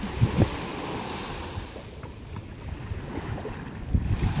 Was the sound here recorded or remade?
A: recorded